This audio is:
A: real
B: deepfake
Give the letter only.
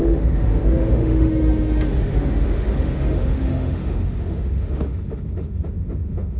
B